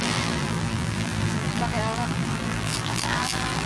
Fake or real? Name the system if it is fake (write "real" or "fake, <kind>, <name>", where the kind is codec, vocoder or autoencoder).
fake, vocoder, BigVGAN v2